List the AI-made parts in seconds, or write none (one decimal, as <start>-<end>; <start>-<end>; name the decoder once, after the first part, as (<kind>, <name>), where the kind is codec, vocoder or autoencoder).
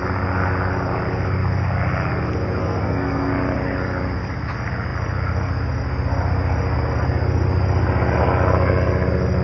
2.6-3.3 (codec, SNAC)